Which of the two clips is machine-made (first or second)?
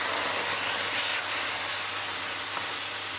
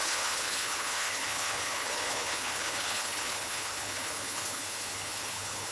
second